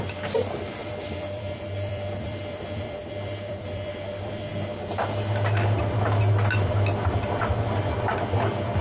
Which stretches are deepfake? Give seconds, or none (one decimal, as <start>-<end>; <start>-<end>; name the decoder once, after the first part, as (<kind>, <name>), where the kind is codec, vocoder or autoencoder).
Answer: 0.8-4.4 (vocoder, BigVGAN v2)